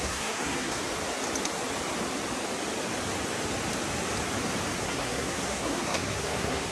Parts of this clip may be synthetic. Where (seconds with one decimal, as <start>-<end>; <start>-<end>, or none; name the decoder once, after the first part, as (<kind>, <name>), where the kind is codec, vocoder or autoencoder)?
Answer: 0.0-0.8 (codec, SNAC); 4.8-6.7